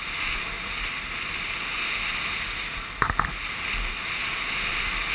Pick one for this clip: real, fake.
real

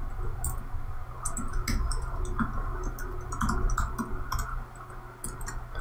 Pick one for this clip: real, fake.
real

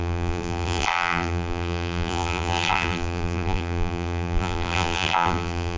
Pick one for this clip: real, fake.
fake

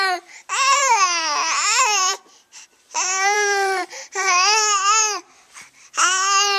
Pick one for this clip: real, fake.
fake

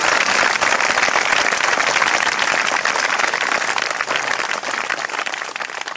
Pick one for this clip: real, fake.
real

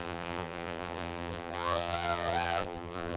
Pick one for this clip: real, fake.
fake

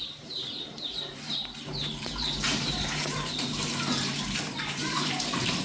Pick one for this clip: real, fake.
fake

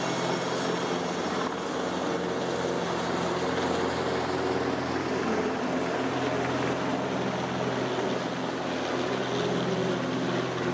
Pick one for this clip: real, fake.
real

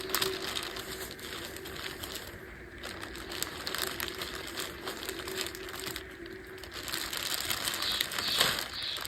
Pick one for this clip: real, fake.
real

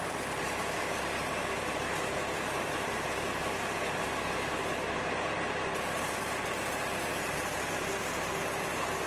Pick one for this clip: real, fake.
fake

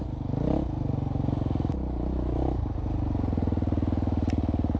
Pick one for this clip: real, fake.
real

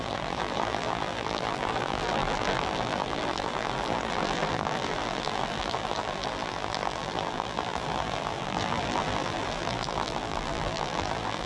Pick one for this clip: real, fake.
fake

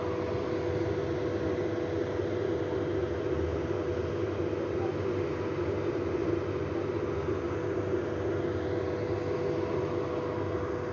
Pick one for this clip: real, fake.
real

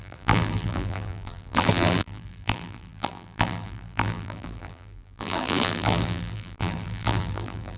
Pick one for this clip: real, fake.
fake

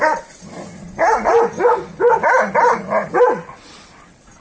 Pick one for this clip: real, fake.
real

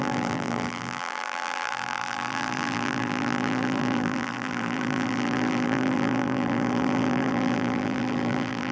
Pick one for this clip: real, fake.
fake